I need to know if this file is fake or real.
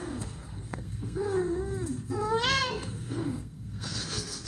fake